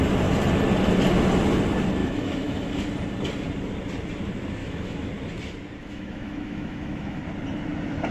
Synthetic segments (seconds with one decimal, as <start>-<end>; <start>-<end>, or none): 2.0-2.8; 4.6-5.1; 5.8-7.2